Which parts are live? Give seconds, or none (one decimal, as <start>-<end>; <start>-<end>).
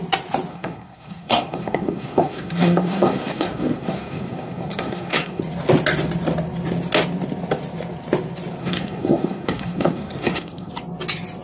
0.0-0.5; 5.4-8.6; 10.7-11.4